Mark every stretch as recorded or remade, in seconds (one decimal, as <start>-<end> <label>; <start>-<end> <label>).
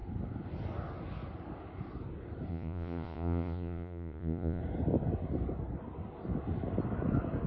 0.0-2.5 recorded; 2.5-4.6 remade; 4.6-7.5 recorded